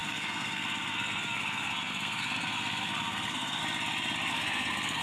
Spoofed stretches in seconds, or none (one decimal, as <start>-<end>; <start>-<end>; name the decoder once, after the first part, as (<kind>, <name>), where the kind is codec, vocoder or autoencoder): 0.0-3.6 (codec, SNAC); 4.3-5.0